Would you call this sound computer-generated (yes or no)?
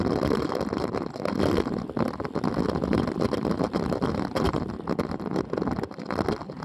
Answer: no